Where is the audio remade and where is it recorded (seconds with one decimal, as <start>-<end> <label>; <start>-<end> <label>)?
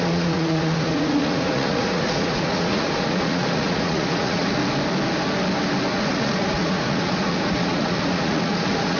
0.0-4.6 remade; 4.6-5.9 recorded; 5.9-9.0 remade